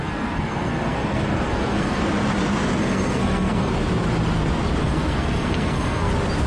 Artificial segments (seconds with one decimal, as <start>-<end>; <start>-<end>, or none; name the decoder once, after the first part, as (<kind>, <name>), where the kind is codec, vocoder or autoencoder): 0.0-2.0 (codec, SNAC); 2.8-3.7; 4.8-6.1